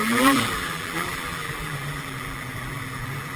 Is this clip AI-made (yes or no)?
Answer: yes